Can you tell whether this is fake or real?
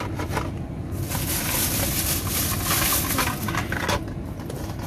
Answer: real